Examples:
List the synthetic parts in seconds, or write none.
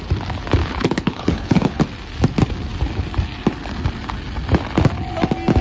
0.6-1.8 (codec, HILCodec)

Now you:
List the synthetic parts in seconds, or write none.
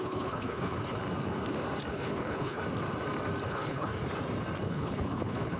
0.0-1.0 (codec, HILCodec); 1.9-2.6; 3.5-3.9; 4.7-5.6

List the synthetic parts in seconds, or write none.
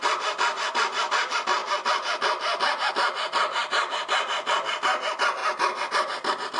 none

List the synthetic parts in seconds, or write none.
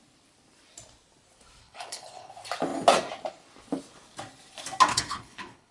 1.6-2.3 (codec, HILCodec); 4.9-5.7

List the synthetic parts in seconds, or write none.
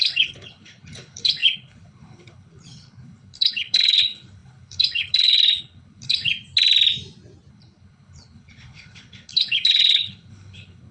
0.0-6.3 (codec, HILCodec); 7.5-10.9